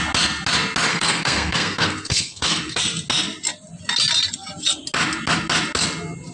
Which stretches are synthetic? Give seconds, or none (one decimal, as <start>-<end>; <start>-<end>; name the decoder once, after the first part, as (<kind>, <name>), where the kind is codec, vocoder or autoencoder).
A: 0.9-2.8 (codec, SNAC)